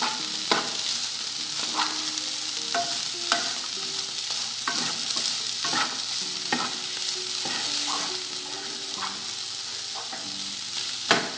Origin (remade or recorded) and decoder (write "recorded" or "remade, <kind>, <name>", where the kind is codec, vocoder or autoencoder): recorded